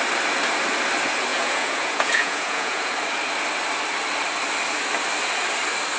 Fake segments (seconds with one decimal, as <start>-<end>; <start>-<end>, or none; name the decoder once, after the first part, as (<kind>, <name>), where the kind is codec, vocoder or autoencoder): 1.3-2.9 (vocoder, Vocos)